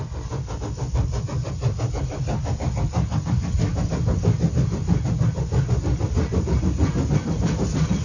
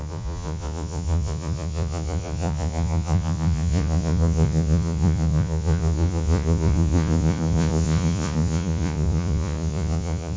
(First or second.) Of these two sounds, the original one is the first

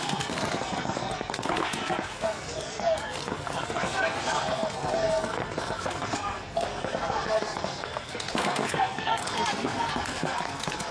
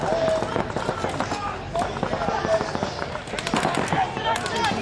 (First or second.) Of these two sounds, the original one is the second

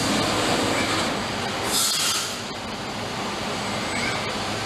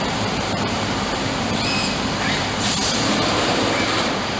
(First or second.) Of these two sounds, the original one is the first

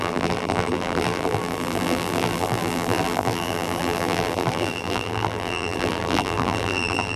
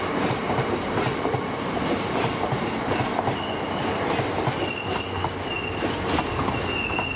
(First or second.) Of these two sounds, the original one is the second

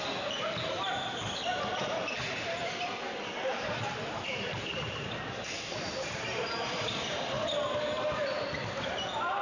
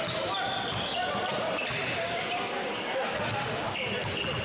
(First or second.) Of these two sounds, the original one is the second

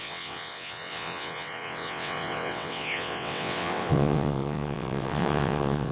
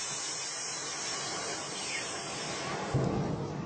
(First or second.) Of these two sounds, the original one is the second